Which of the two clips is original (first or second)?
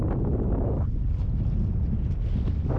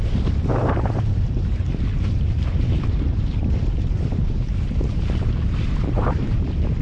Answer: first